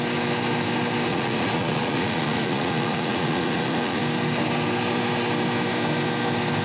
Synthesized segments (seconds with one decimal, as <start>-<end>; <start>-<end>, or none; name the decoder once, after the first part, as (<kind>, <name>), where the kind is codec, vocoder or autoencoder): 1.1-4.0 (vocoder, Vocos)